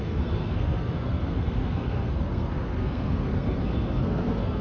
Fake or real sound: fake